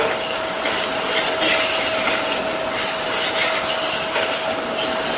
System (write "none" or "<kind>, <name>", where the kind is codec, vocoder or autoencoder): none